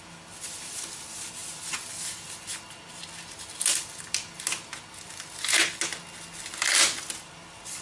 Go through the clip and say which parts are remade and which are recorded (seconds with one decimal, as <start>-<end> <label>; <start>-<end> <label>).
0.0-7.8 recorded